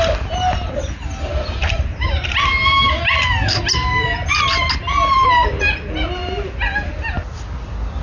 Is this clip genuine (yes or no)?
yes